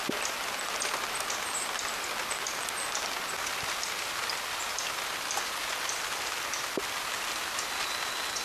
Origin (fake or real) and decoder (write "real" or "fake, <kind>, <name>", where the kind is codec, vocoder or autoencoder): real